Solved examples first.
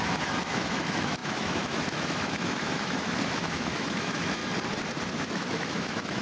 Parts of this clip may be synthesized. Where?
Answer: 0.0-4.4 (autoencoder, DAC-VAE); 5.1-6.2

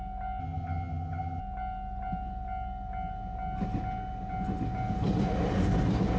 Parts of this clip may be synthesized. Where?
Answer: 0.4-1.4 (vocoder, HiFi-GAN)

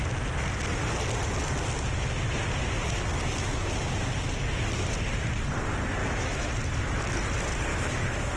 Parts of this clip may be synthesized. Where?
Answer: 6.0-6.5 (autoencoder, DAC-VAE); 7.7-8.4